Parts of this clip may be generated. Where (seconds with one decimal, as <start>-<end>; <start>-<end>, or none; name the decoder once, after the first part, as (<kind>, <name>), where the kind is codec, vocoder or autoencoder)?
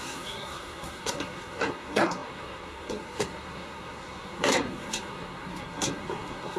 0.0-6.6 (codec, SNAC)